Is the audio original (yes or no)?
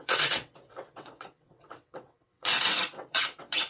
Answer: no